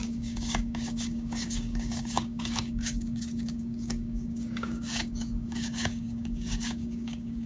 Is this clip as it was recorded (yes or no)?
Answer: no